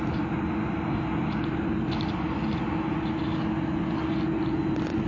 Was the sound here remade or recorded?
recorded